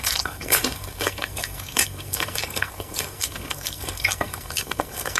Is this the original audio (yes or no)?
no